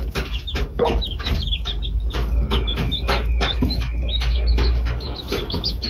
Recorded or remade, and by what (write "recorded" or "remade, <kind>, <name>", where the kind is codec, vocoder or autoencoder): remade, codec, DAC